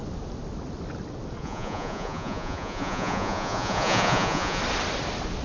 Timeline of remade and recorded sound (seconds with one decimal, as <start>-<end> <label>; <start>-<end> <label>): 0.0-1.4 recorded; 1.4-4.6 remade; 4.6-5.4 recorded